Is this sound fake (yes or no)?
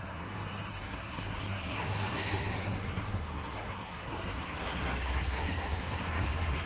yes